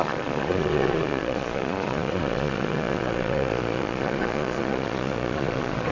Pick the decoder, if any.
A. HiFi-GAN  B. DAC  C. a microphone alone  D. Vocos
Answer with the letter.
D